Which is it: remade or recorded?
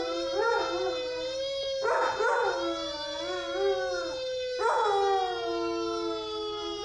recorded